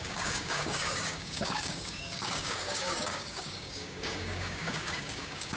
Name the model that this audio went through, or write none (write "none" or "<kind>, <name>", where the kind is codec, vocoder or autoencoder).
codec, DAC